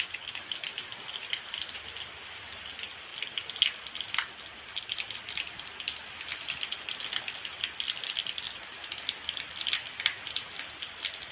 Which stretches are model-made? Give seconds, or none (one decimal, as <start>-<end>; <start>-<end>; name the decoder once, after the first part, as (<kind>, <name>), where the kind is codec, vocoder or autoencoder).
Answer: none